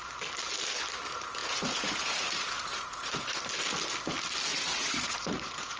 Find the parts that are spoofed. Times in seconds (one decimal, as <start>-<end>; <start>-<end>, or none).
1.4-3.4; 4.5-5.8